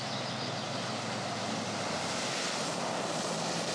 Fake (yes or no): no